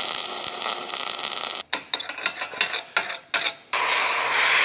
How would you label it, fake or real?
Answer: real